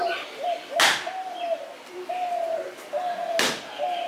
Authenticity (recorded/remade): recorded